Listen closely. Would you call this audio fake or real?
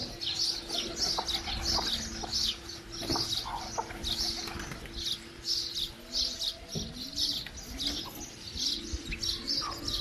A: real